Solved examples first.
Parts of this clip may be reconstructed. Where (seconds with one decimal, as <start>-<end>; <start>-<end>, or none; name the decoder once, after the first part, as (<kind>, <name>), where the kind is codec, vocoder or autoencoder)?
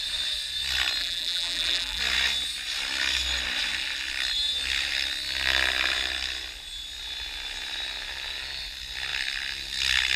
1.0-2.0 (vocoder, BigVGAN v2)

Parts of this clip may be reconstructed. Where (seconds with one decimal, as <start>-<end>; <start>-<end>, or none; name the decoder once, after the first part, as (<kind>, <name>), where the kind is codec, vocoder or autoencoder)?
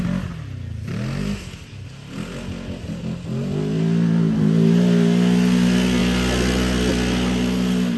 none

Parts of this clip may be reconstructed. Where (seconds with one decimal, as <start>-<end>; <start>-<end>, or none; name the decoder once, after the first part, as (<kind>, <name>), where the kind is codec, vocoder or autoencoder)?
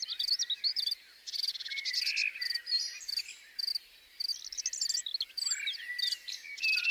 0.7-3.2 (vocoder, BigVGAN v2)